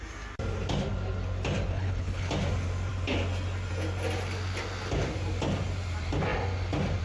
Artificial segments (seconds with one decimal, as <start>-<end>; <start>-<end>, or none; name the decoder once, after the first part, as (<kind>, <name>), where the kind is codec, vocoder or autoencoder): 1.7-2.3 (codec, HILCodec)